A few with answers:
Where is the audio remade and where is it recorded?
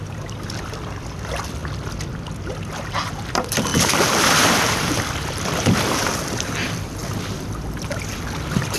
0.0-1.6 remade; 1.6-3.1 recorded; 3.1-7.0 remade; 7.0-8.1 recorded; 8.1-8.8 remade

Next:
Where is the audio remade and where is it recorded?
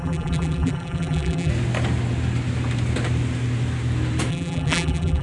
0.0-1.5 remade; 1.5-4.3 recorded; 4.3-5.2 remade